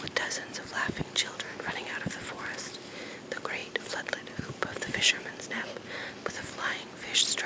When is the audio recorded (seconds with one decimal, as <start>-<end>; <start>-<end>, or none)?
0.0-7.5